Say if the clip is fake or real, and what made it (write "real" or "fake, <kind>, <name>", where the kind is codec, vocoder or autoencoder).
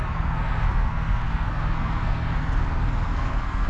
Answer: fake, codec, SNAC